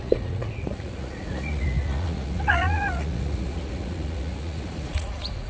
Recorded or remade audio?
remade